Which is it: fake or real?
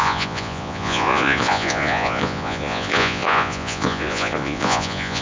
fake